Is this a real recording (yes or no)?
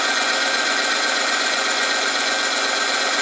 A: no